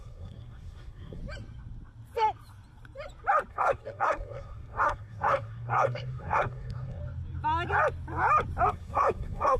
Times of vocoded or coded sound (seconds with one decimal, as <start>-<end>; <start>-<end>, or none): 0.0-1.2; 3.5-7.0; 8.7-9.6